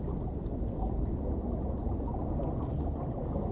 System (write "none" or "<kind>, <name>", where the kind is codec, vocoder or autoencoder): none